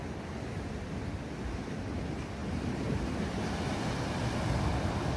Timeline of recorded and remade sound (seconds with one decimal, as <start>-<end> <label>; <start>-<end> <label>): 0.0-2.4 recorded; 2.4-4.7 remade; 4.7-5.2 recorded